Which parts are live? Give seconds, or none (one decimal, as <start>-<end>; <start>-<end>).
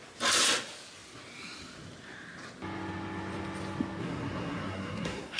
0.0-4.0